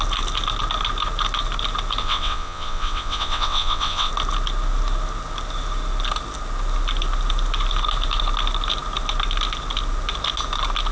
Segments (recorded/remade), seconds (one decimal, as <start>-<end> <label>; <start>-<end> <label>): 0.0-2.0 recorded; 2.0-4.1 remade; 4.1-10.9 recorded